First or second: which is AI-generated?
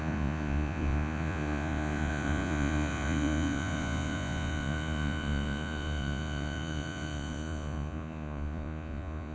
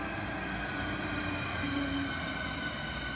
first